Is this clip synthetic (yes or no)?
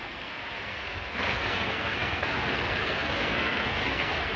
yes